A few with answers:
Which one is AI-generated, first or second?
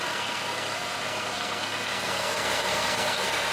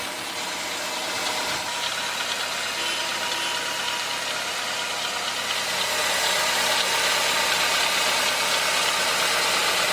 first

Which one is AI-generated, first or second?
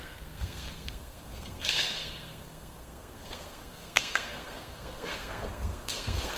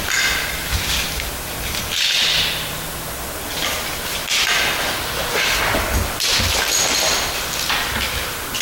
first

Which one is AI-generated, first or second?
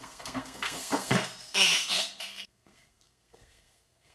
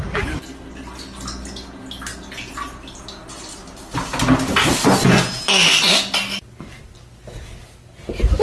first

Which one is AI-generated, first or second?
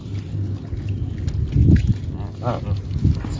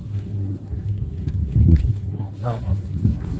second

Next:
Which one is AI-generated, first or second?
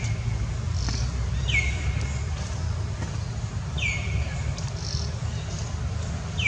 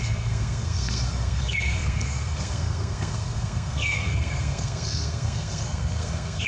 second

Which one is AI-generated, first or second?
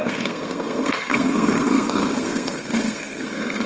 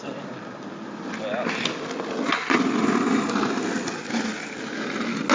first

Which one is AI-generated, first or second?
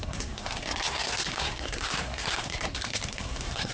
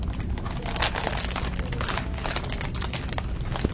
first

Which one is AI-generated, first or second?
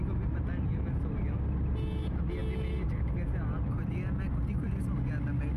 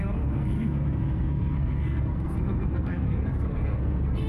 second